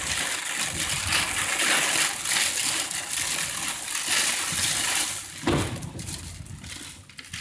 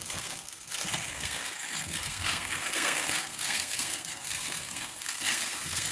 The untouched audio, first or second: first